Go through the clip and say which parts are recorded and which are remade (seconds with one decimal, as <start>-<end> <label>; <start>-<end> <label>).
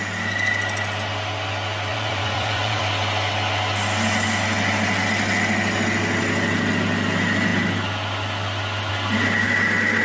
0.0-1.9 recorded; 1.9-2.8 remade; 2.8-10.0 recorded